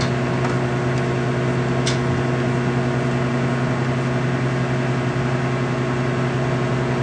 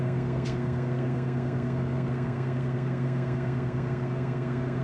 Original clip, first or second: first